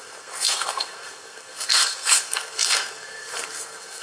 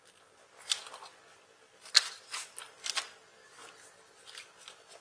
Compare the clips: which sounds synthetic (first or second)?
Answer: first